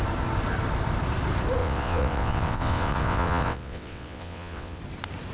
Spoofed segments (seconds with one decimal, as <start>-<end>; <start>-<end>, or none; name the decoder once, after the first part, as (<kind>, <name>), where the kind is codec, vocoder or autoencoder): 1.6-4.8 (vocoder, WaveNeXt)